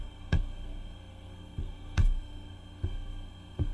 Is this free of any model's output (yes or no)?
no